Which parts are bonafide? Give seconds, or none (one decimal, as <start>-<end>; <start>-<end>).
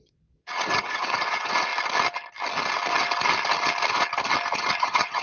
1.7-4.8